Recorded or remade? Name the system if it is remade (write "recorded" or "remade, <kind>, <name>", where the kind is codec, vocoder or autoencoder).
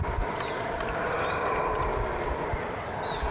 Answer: remade, vocoder, BigVGAN v2